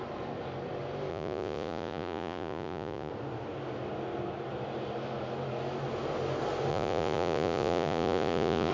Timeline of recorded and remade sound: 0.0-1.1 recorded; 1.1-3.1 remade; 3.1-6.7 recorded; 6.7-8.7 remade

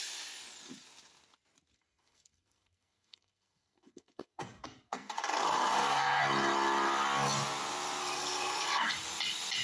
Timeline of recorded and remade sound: 0.0-1.7 recorded; 1.7-6.2 remade; 6.2-8.0 recorded; 8.0-8.9 remade; 8.9-9.6 recorded